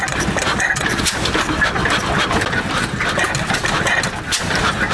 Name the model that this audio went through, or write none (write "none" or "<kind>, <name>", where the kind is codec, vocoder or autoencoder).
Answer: none